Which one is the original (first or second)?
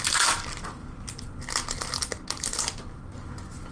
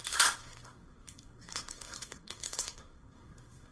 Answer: first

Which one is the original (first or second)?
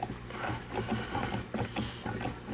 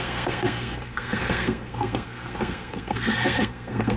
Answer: first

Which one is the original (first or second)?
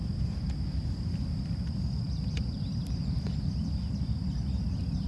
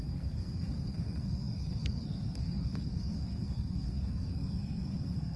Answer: first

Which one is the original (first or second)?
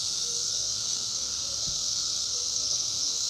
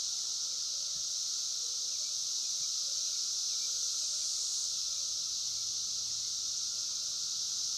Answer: second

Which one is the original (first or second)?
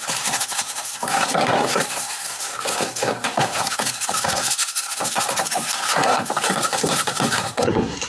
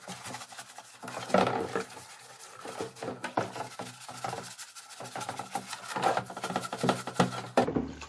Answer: second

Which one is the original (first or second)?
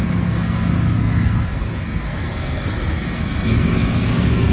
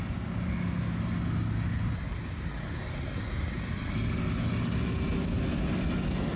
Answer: second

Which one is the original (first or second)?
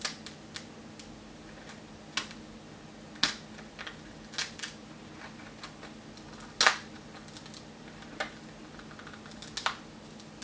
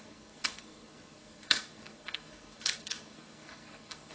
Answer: first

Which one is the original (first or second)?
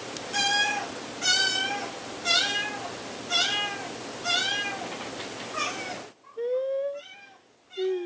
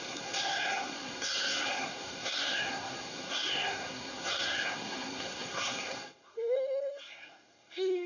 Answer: first